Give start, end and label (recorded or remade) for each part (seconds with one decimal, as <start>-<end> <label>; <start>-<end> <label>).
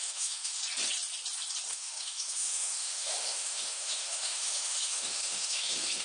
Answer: 0.0-0.6 remade; 0.6-1.7 recorded; 1.7-6.0 remade